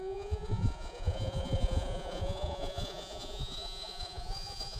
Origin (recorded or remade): remade